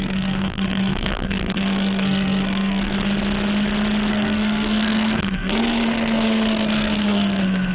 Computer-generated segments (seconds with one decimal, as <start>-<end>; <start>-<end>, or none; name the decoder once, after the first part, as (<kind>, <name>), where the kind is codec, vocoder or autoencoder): 0.0-2.9 (codec, SNAC); 4.1-7.7